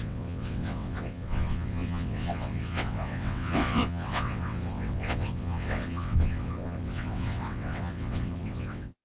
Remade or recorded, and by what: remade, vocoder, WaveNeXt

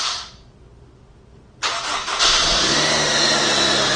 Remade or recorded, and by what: recorded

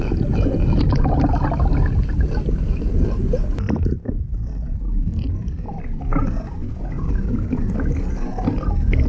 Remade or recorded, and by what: recorded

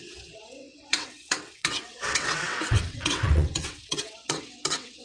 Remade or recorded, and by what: remade, vocoder, WaveNeXt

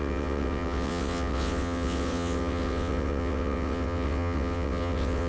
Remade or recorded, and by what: remade, vocoder, WaveNeXt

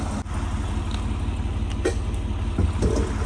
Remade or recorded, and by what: recorded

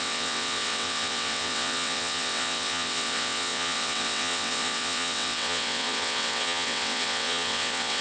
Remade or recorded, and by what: remade, vocoder, WaveNeXt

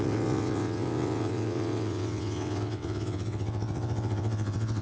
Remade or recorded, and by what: remade, vocoder, WaveNeXt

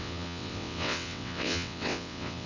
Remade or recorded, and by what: remade, vocoder, WaveNeXt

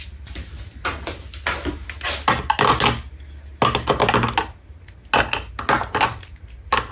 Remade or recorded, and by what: recorded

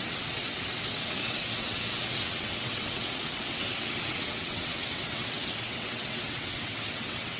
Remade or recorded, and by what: remade, vocoder, WaveNeXt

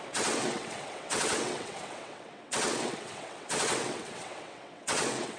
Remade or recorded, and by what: remade, vocoder, WaveNeXt